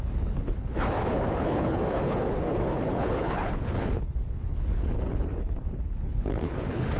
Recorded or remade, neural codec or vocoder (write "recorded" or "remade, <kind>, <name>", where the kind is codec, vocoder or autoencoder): remade, codec, HILCodec